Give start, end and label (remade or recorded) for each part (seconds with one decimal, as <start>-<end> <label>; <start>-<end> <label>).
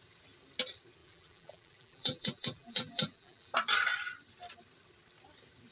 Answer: 0.0-1.0 recorded; 1.0-3.5 remade; 3.5-5.7 recorded